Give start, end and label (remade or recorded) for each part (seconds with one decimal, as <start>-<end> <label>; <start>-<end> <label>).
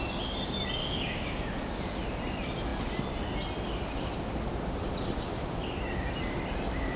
0.0-0.8 recorded; 0.8-1.4 remade; 1.4-7.0 recorded